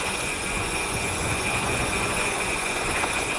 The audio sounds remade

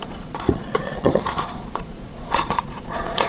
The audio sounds remade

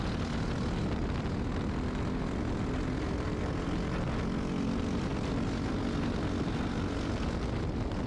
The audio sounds recorded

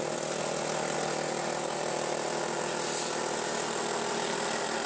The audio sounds recorded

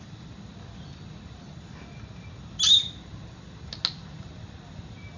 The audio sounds recorded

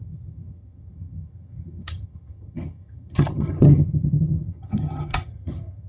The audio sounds remade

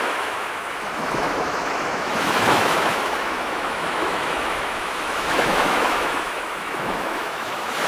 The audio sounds remade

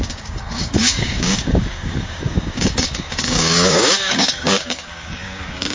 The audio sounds remade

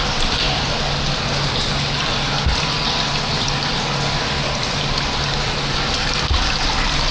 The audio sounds recorded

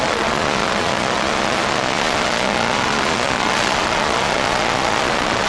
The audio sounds remade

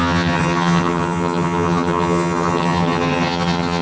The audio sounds remade